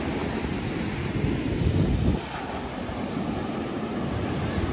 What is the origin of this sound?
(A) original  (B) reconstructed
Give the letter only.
A